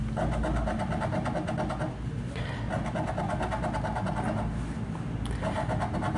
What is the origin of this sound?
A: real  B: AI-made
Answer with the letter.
A